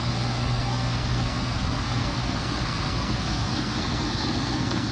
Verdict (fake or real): fake